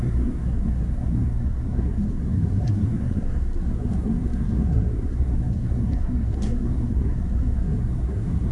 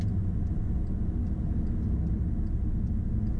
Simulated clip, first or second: first